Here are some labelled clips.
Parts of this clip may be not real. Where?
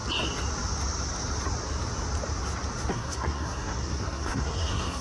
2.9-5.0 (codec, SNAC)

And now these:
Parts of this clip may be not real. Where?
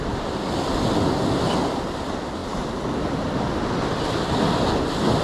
none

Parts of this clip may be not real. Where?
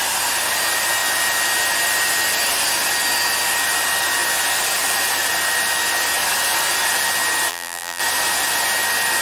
7.5-8.0 (vocoder, BigVGAN v2)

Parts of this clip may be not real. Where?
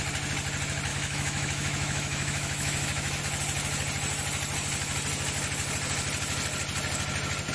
0.9-3.2 (autoencoder, DAC-VAE)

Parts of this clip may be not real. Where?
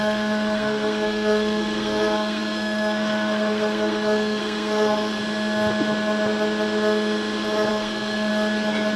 0.0-5.2 (codec, SNAC); 7.7-8.3